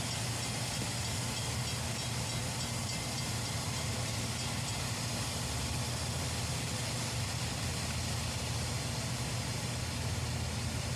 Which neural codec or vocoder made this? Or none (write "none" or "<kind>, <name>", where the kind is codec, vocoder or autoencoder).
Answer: none